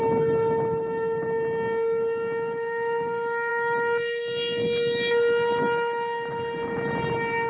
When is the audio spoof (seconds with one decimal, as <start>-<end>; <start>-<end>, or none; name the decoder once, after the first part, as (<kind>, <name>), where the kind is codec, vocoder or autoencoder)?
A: none

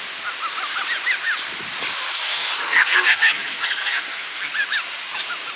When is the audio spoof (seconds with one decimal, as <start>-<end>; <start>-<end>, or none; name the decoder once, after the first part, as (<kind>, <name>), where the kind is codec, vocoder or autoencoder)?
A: 2.2-4.4 (codec, SNAC)

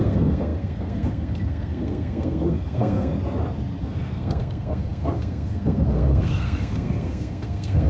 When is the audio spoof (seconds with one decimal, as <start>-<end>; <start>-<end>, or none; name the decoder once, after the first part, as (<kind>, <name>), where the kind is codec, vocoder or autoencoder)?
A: 0.0-3.1 (codec, SNAC); 3.8-7.9